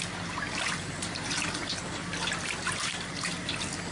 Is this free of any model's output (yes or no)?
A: yes